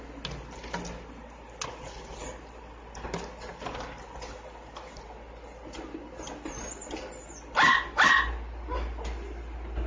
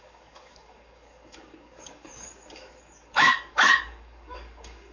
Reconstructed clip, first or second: second